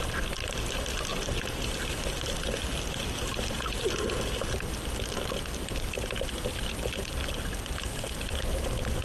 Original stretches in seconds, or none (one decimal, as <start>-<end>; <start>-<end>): 0.0-1.1; 1.7-9.0